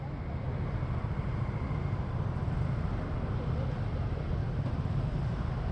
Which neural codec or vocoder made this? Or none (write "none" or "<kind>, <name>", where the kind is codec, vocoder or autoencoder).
none